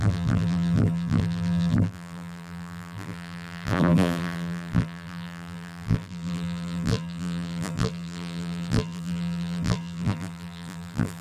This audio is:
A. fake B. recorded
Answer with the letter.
A